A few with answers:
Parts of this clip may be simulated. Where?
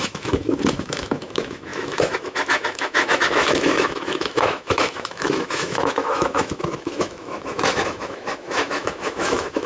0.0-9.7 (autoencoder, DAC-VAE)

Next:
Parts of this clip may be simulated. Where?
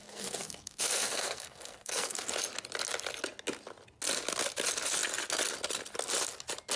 0.0-2.3 (codec, SNAC)